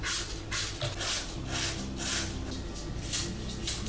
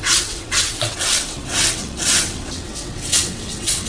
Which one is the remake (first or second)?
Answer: second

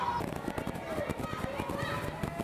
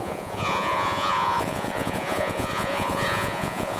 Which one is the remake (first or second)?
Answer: second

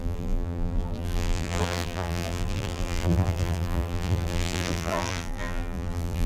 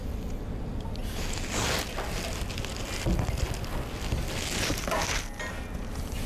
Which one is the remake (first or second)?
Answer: first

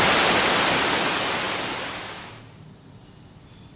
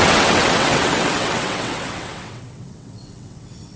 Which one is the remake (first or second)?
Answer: second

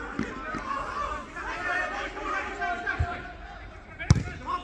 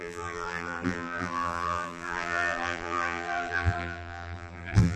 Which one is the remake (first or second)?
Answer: second